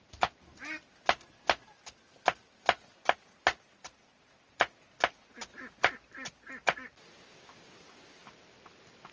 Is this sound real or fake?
real